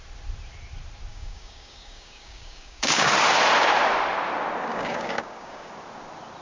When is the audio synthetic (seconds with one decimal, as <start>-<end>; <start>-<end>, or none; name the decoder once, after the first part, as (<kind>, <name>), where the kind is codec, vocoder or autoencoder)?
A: 1.1-3.1 (codec, DAC); 4.7-5.7